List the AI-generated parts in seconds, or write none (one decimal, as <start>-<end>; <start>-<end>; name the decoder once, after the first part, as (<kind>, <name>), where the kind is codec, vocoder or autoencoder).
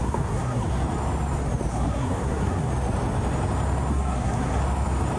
0.0-0.7 (codec, SNAC); 1.7-2.7; 3.9-4.6